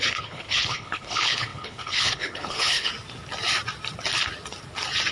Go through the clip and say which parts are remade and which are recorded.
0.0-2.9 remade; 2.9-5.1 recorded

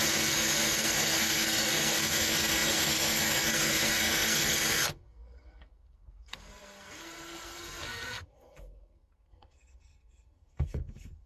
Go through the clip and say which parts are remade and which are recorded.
0.0-11.3 remade